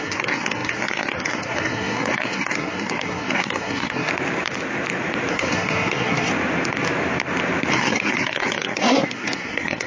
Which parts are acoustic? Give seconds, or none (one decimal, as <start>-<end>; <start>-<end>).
4.1-5.3; 6.3-7.7

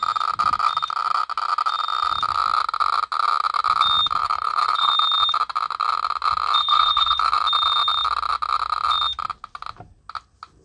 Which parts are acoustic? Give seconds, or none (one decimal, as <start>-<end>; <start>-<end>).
0.0-4.2; 4.9-6.6; 7.3-10.6

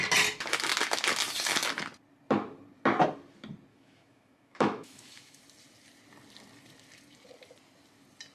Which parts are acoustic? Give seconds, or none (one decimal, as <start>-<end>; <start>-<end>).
0.0-3.7; 5.4-8.3